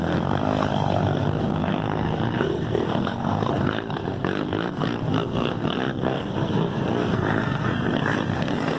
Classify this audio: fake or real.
fake